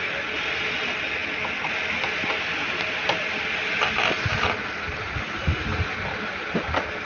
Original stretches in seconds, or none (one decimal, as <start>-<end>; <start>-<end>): 0.0-7.0